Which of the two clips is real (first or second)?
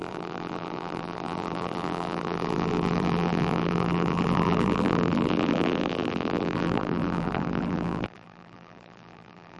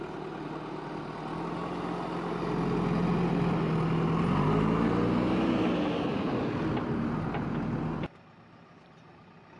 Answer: second